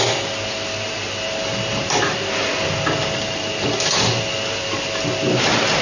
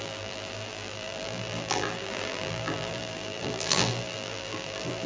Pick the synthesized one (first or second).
second